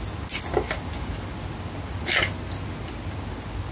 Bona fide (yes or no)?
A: yes